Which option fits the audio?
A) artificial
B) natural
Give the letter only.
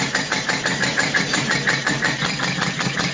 B